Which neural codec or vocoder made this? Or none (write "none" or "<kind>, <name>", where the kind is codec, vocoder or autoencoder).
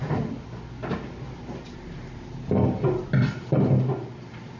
none